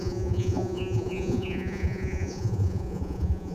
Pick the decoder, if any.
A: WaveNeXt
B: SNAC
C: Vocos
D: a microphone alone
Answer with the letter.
C